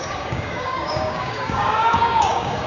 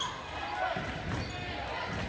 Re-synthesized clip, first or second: first